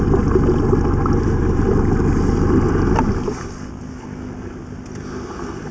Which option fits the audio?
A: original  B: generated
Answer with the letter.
A